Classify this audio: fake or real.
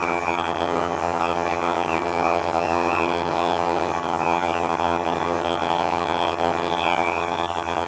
fake